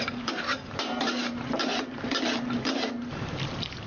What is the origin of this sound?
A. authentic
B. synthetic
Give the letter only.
B